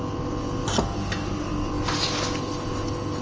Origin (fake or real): real